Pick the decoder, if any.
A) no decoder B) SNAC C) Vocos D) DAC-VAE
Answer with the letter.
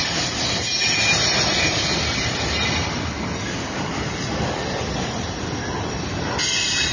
A